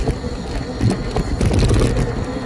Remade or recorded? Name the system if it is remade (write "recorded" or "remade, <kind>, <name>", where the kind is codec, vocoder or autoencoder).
recorded